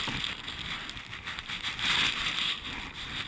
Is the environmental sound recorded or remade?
recorded